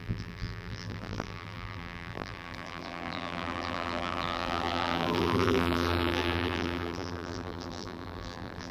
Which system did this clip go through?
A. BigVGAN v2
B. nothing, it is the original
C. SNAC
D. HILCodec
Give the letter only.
A